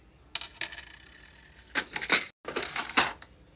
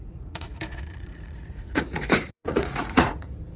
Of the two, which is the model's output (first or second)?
second